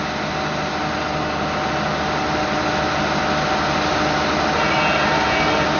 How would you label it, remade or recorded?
recorded